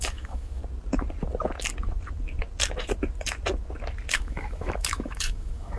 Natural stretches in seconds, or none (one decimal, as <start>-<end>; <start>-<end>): 0.6-4.1